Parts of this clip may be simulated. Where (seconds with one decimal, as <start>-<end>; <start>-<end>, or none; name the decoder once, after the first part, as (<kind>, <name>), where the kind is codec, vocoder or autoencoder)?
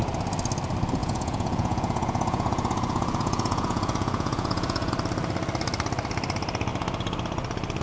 1.0-4.9 (vocoder, Vocos)